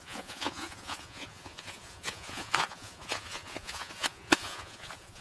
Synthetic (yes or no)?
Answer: yes